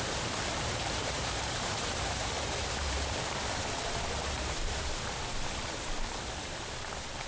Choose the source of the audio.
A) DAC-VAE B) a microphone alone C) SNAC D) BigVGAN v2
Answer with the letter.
D